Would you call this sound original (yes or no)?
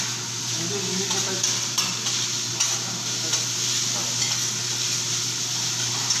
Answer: yes